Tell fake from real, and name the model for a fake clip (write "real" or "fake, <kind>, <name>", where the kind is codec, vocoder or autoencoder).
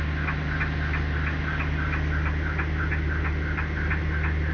real